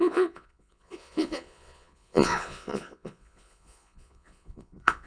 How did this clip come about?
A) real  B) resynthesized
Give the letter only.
B